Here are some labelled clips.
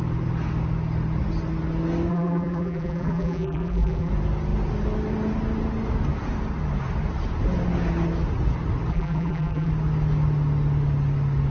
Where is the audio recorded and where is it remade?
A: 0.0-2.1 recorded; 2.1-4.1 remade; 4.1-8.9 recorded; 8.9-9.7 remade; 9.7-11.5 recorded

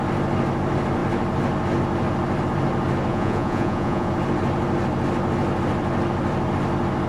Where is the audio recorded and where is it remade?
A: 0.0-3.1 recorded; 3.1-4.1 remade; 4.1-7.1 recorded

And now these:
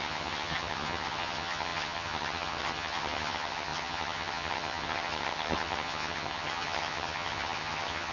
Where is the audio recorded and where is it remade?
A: 0.0-8.1 remade

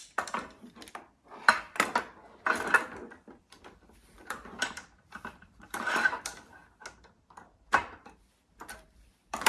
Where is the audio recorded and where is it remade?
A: 0.0-3.4 recorded; 3.4-6.6 remade; 6.6-8.2 recorded; 8.2-9.5 remade

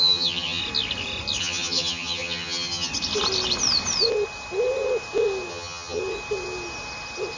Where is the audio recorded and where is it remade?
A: 0.0-0.6 remade; 0.6-1.4 recorded; 1.4-2.9 remade; 2.9-5.5 recorded; 5.5-6.0 remade; 6.0-7.4 recorded

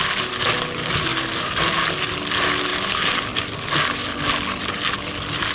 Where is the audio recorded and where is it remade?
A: 0.0-2.7 recorded; 2.7-3.4 remade; 3.4-5.5 recorded